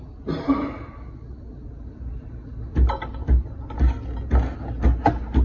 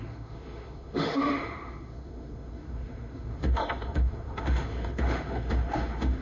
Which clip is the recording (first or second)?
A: first